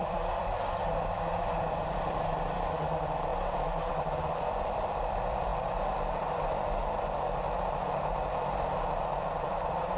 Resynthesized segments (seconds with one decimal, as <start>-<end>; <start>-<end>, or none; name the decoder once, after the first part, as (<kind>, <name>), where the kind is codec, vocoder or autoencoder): 0.0-3.3 (vocoder, BigVGAN v2); 3.9-5.5; 6.1-6.8; 9.2-10.0